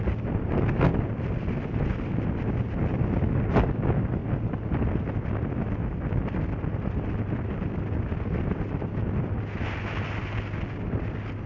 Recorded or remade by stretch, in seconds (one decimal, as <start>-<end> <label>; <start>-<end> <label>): 0.0-11.5 recorded